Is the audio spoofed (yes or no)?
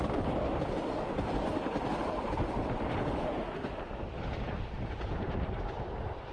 yes